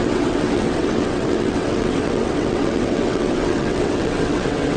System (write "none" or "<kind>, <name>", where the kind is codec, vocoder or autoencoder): vocoder, WaveNeXt